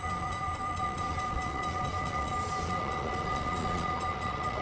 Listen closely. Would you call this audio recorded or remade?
remade